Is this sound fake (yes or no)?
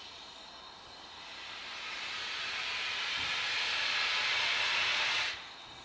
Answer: no